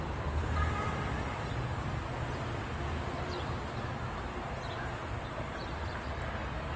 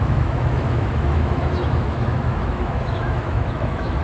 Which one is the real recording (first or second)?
first